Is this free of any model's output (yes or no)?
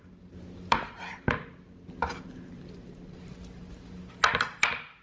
yes